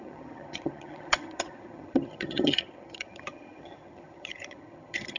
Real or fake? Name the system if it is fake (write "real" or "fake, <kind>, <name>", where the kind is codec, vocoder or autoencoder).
fake, vocoder, HiFi-GAN